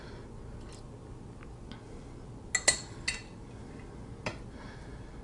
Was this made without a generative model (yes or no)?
yes